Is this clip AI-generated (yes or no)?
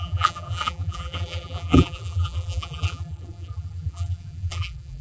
yes